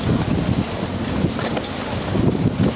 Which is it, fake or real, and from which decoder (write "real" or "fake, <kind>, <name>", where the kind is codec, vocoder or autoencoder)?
real